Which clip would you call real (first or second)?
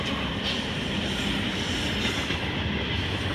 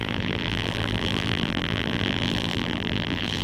first